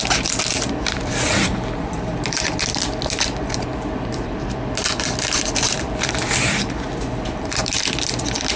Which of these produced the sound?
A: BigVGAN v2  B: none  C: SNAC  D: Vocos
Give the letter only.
A